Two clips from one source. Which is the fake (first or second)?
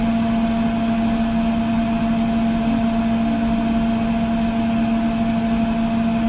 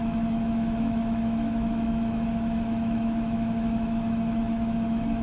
second